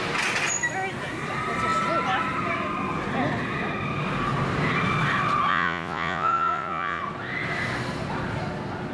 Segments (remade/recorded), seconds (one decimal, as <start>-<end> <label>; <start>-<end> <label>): 0.0-5.5 recorded; 5.5-7.0 remade; 7.0-8.9 recorded